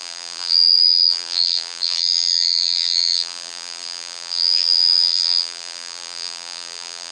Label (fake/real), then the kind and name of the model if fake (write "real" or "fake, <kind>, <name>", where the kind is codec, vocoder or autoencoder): fake, vocoder, BigVGAN v2